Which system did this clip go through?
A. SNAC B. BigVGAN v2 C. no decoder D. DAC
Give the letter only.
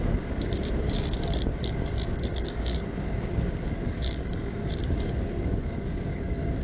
D